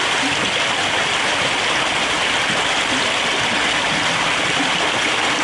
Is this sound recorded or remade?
recorded